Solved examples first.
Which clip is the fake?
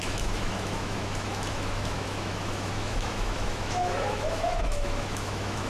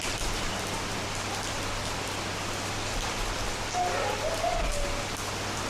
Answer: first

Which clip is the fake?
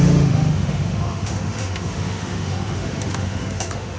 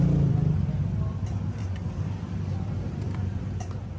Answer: first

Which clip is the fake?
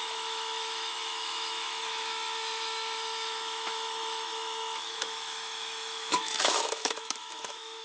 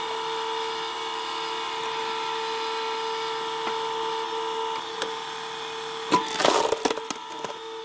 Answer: first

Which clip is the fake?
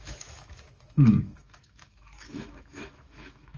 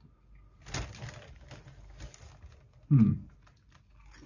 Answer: first